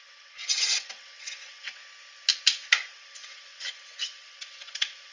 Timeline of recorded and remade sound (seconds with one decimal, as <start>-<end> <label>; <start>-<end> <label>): 0.0-1.8 remade; 1.8-2.9 recorded; 2.9-5.1 remade

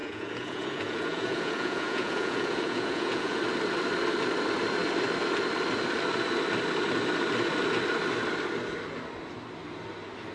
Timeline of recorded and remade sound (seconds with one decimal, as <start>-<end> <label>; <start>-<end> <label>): 0.0-3.4 remade; 3.4-10.3 recorded

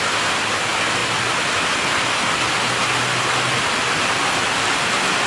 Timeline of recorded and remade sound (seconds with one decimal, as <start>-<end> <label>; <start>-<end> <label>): 0.0-5.3 recorded

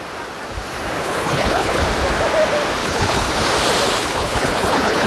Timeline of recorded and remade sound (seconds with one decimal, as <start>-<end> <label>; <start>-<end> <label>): 0.0-1.0 recorded; 1.0-1.8 remade; 1.8-2.8 recorded; 2.8-3.3 remade; 3.3-4.0 recorded; 4.0-5.1 remade

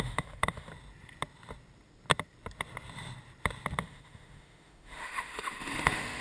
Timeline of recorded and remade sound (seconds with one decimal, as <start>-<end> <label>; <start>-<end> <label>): 0.0-0.7 remade; 0.7-3.8 recorded; 3.8-6.2 remade